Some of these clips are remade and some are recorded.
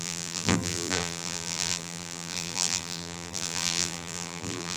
remade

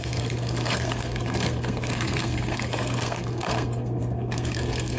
remade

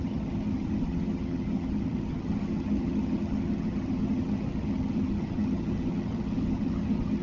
remade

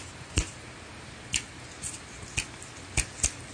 recorded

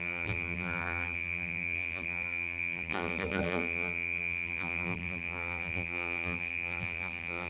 remade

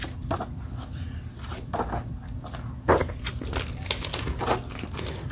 recorded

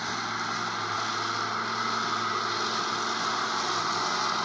recorded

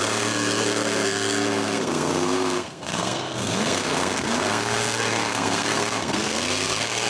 remade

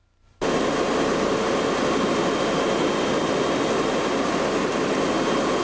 recorded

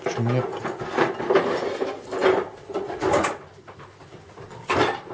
recorded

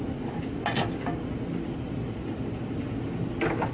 recorded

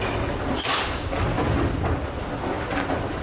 recorded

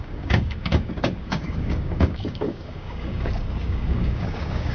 remade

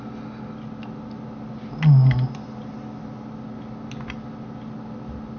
recorded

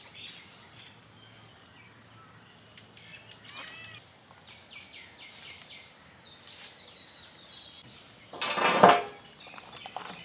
recorded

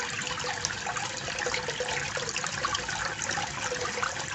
recorded